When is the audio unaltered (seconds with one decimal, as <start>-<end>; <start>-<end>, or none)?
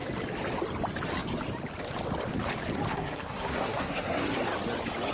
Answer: 0.0-2.9; 4.4-5.1